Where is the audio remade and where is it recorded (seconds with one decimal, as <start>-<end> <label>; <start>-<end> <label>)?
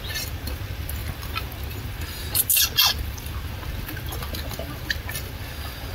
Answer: 0.0-5.9 recorded